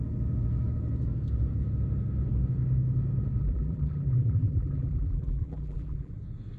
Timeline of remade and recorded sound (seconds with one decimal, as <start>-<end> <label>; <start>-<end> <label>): 0.0-3.4 recorded; 3.4-6.1 remade; 6.1-6.6 recorded